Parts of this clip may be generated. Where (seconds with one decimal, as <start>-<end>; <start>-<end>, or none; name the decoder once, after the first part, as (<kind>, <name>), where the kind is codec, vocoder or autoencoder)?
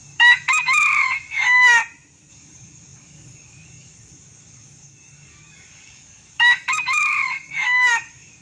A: 0.0-1.8 (codec, DAC); 2.3-8.4